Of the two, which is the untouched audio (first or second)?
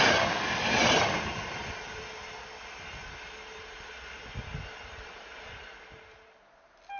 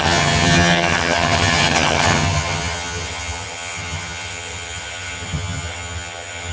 first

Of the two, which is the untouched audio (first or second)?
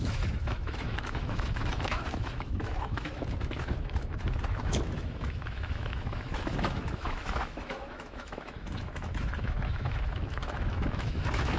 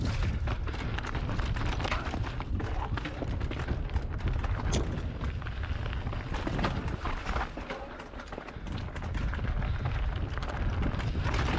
second